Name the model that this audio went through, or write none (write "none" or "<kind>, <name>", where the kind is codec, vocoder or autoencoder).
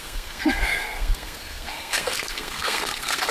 codec, SNAC